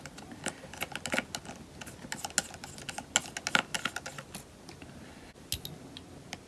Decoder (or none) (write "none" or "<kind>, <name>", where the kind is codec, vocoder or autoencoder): none